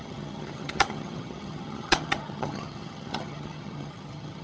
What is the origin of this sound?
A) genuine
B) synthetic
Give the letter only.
B